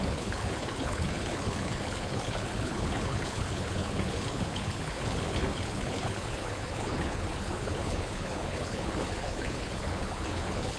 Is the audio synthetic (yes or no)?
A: yes